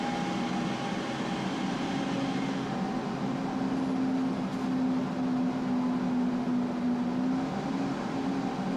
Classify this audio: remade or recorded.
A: recorded